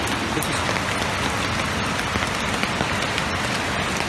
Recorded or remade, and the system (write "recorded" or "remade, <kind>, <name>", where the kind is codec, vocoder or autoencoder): recorded